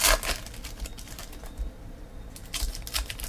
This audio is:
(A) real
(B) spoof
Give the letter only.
A